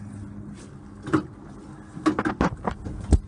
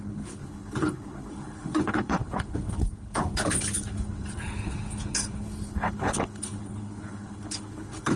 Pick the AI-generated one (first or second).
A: second